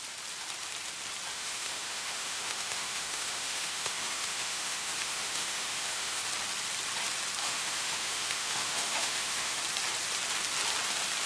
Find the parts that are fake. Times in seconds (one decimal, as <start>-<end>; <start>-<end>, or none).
1.3-6.2; 7.4-9.6